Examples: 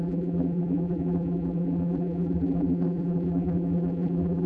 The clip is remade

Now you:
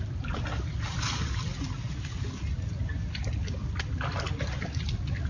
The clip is recorded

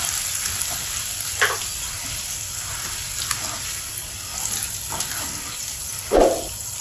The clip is recorded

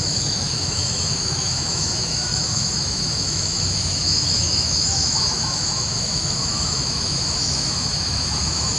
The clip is remade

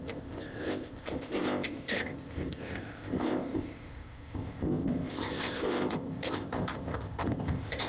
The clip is remade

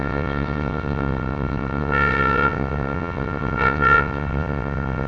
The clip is remade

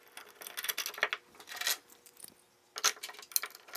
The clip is recorded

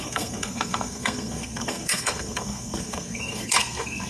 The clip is remade